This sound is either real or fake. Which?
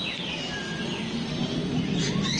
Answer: real